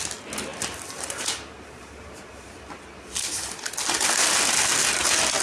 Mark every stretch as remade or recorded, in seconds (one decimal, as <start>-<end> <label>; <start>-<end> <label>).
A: 0.0-0.5 recorded; 0.5-3.7 remade; 3.7-5.4 recorded